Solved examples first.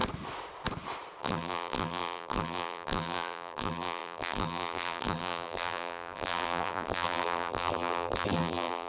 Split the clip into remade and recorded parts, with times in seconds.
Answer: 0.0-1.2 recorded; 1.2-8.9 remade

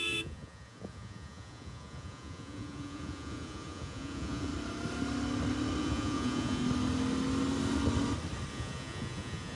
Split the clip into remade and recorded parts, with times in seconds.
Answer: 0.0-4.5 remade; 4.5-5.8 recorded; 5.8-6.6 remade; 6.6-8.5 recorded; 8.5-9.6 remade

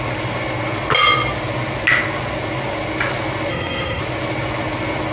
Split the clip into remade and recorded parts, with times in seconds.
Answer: 0.0-3.5 recorded; 3.5-4.0 remade; 4.0-5.1 recorded

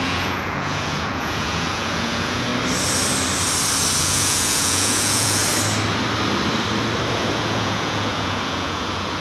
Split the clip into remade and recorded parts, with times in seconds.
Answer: 0.0-2.5 remade; 2.5-4.0 recorded; 4.0-5.4 remade; 5.4-7.1 recorded; 7.1-9.2 remade